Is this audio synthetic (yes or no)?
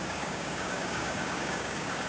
yes